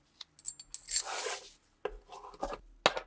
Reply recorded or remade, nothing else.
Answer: recorded